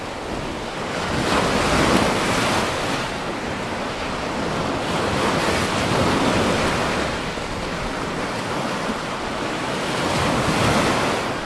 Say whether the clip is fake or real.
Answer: real